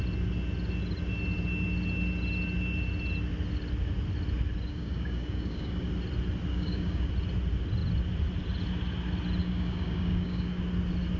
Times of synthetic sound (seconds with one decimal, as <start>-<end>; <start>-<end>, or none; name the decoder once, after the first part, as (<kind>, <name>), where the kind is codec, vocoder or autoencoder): 4.7-5.9 (codec, DAC); 6.5-7.1; 9.4-10.6